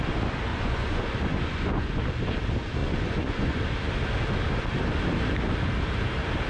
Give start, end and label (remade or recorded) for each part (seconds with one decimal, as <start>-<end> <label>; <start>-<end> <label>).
0.0-0.5 recorded; 0.5-2.0 remade; 2.0-2.8 recorded; 2.8-3.6 remade; 3.6-6.5 recorded